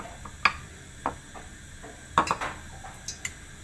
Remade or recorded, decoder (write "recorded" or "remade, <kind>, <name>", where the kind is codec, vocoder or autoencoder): recorded